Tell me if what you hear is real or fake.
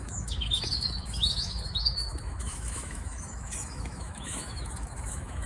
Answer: fake